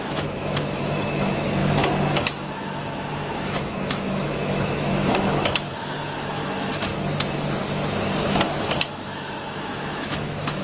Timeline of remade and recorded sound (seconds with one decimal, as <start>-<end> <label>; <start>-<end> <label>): 0.0-6.9 remade; 6.9-8.2 recorded; 8.2-10.6 remade